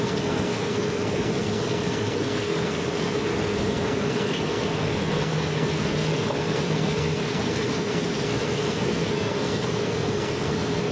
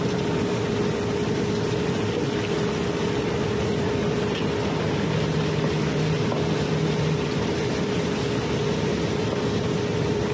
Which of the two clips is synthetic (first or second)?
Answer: first